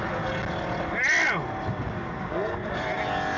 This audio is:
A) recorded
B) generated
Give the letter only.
A